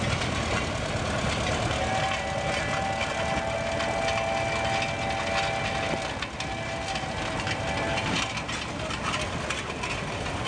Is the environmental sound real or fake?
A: real